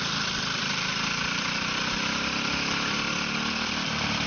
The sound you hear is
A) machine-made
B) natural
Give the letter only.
A